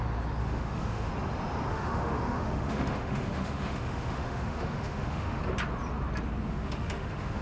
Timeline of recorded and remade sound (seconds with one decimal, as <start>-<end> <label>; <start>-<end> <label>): 0.0-0.4 recorded; 0.4-1.1 remade; 1.1-1.7 recorded; 1.7-5.4 remade; 5.4-6.5 recorded; 6.5-7.4 remade